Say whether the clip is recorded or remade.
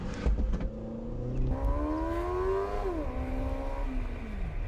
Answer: recorded